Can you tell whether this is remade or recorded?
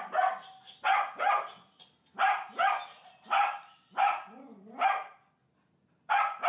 recorded